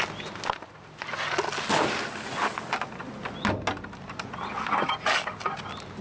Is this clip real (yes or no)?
yes